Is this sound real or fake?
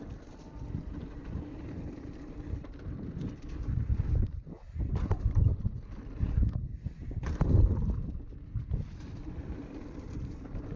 real